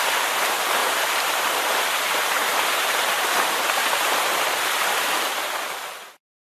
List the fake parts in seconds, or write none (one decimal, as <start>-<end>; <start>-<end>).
0.8-4.0